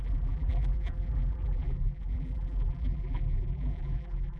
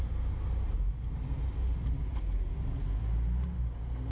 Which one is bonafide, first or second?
second